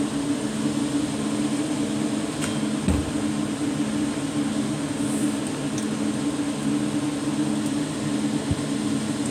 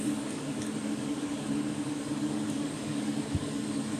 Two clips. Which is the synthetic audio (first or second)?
second